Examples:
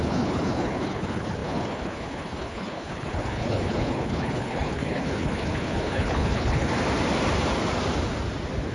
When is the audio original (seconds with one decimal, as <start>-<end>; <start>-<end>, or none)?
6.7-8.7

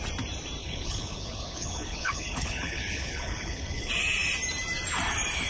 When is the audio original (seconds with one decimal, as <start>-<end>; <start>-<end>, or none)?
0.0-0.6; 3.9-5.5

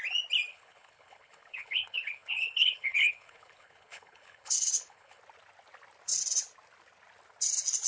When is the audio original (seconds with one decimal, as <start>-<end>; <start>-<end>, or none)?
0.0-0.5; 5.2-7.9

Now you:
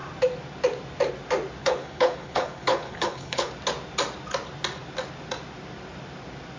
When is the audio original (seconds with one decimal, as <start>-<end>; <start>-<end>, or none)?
0.0-1.6; 3.5-6.6

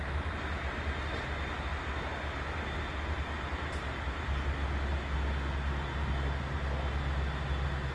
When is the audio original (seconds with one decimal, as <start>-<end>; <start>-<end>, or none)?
0.0-7.9